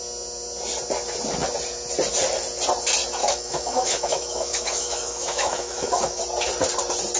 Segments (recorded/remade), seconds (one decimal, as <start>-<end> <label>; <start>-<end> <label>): 0.0-3.2 recorded; 3.2-6.2 remade; 6.2-7.2 recorded